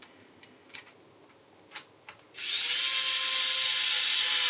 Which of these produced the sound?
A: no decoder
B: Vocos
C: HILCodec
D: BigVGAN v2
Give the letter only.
A